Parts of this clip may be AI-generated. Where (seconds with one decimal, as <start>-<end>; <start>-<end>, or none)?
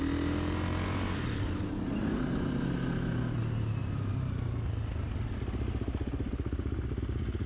none